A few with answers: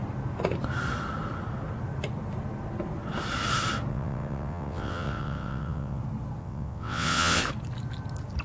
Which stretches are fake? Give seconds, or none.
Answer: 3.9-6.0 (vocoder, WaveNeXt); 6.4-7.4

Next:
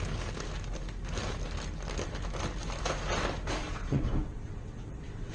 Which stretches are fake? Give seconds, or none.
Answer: 3.6-5.3 (vocoder, WaveNeXt)

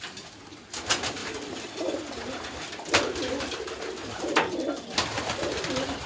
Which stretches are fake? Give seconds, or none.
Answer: none

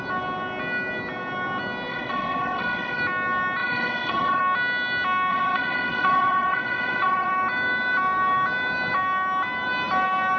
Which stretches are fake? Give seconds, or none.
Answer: 1.9-3.0 (vocoder, WaveNeXt); 3.6-4.4; 5.3-7.3

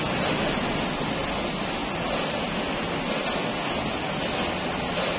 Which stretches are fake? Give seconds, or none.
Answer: none

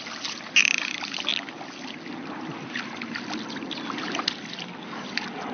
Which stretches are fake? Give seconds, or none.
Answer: none